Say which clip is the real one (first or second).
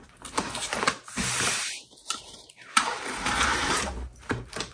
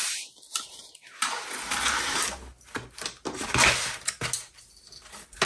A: second